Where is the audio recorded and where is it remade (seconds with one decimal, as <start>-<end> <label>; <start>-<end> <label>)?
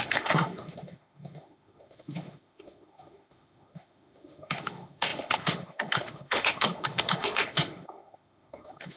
0.0-9.0 remade